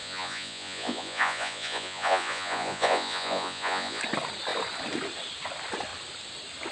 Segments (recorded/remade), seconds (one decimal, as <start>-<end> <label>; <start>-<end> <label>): 0.0-4.0 remade; 4.0-6.7 recorded